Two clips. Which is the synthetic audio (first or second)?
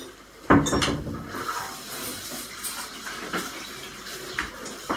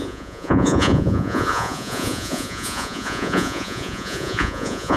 second